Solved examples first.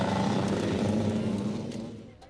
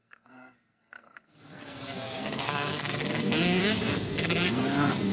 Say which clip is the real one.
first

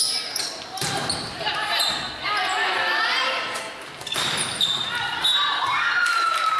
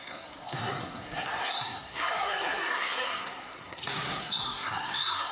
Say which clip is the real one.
first